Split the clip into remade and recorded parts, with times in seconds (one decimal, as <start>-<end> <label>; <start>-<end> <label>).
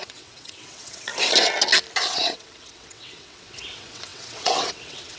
0.0-1.1 remade; 1.1-2.1 recorded; 2.1-5.2 remade